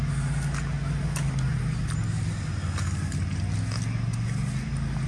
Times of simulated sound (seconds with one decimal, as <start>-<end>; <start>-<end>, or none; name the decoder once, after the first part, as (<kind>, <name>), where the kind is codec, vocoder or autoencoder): none